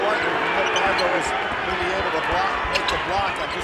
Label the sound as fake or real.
real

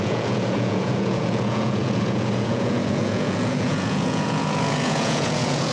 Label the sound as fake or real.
fake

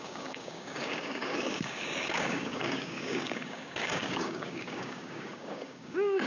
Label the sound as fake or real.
fake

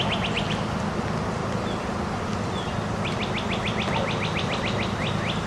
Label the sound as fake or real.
real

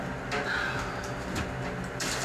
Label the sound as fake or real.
real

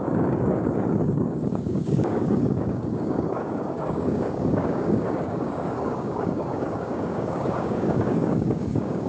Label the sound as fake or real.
fake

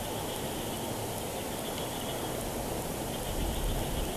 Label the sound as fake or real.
real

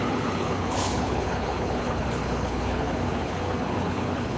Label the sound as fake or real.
fake